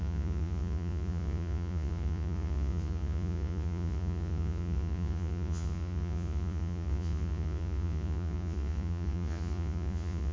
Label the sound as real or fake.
fake